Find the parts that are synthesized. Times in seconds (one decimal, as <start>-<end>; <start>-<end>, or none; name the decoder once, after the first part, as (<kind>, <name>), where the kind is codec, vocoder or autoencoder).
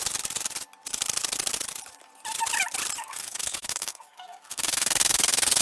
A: 3.0-5.6 (codec, SNAC)